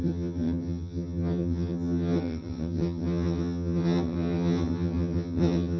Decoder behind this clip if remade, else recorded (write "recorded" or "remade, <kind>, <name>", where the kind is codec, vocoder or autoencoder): remade, vocoder, HiFi-GAN